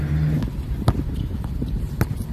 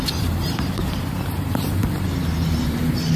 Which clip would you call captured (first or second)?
first